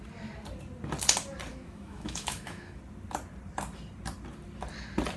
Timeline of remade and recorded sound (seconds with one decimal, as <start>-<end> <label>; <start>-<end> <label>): 0.0-1.5 recorded; 1.5-2.8 remade; 2.8-5.2 recorded